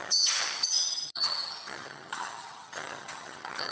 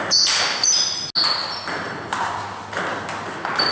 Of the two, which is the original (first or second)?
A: second